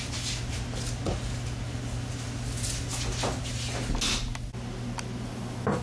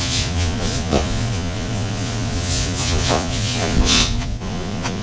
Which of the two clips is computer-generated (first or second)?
second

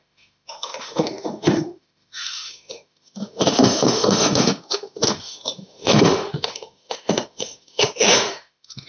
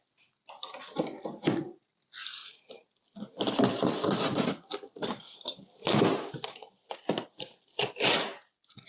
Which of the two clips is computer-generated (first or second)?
first